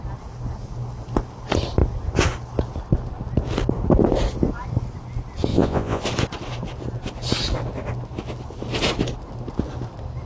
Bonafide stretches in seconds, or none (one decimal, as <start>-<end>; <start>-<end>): 0.0-5.5; 6.0-10.3